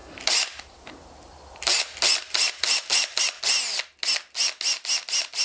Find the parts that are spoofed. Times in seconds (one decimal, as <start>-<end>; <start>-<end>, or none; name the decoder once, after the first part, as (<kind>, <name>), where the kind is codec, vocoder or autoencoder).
0.0-3.2 (vocoder, BigVGAN v2)